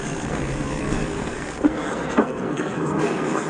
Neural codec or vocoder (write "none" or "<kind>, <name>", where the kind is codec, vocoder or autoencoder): codec, SNAC